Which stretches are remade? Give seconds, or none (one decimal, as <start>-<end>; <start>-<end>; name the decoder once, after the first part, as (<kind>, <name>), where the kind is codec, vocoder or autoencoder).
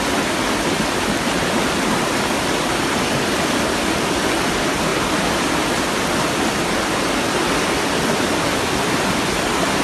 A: none